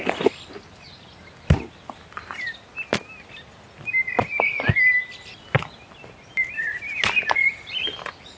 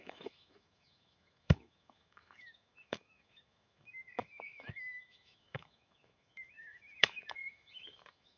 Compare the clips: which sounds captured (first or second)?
first